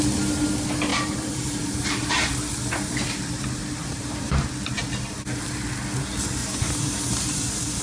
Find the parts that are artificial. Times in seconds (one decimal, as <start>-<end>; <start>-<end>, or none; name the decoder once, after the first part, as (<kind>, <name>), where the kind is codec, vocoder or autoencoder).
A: 0.9-2.1 (vocoder, BigVGAN v2); 3.6-4.5; 6.4-7.8